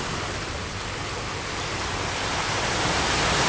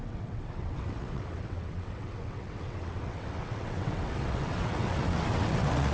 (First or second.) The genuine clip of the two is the first